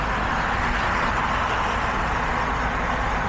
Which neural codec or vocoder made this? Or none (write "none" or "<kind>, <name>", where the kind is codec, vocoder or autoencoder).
none